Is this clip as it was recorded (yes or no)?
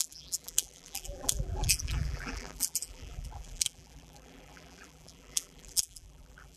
no